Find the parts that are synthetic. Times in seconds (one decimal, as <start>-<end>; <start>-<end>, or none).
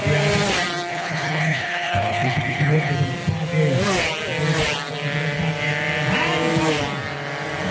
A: 0.9-2.9